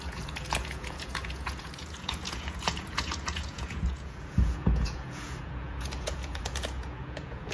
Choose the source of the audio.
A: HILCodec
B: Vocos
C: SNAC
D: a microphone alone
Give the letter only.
B